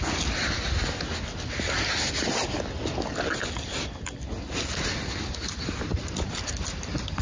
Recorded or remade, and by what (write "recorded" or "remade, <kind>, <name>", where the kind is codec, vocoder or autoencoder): recorded